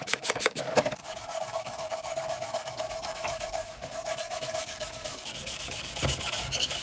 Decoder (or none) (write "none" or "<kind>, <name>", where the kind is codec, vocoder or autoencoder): codec, DAC